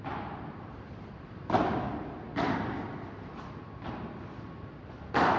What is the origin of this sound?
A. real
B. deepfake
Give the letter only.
B